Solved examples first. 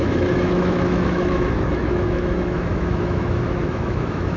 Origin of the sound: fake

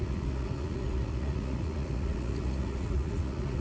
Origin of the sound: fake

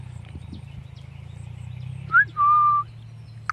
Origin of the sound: real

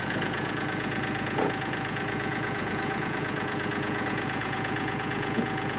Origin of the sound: fake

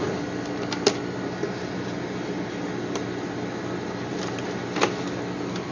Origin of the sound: real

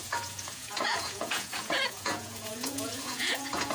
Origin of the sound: fake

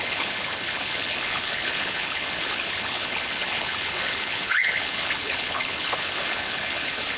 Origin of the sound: fake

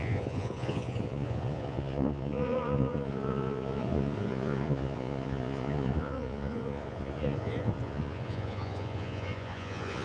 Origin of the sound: fake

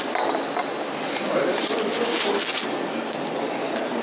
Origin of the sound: real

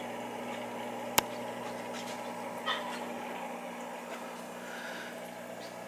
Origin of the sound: real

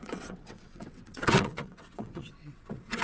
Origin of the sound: fake